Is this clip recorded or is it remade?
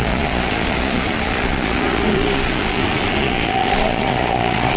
remade